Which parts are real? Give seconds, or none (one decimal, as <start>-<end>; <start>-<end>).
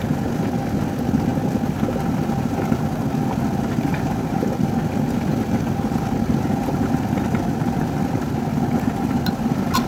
0.0-9.9